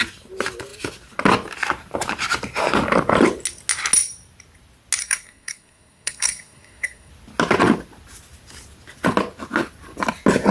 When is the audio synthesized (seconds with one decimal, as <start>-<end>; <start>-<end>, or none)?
5.0-7.1